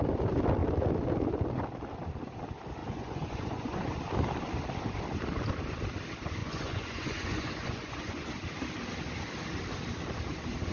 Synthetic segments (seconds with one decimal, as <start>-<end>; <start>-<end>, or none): 2.8-3.8; 6.4-8.3